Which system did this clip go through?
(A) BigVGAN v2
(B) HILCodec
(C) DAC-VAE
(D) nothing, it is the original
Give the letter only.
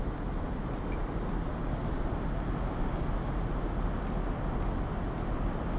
D